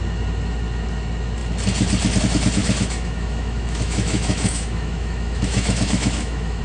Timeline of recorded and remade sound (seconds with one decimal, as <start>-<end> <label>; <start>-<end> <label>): 0.0-2.6 recorded; 2.6-6.6 remade